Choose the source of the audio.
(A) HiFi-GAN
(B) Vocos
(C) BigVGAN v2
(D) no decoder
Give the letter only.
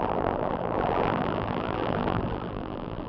C